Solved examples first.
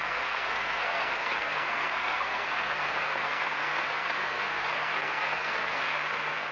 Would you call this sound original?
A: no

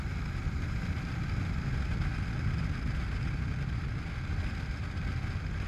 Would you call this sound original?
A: yes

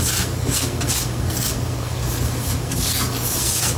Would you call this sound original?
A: no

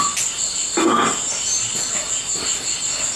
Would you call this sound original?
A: yes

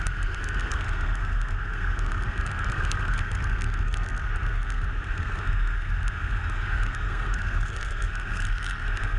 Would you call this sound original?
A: no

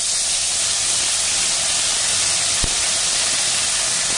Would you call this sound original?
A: yes